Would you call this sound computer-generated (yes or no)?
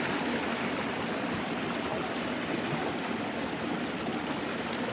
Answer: no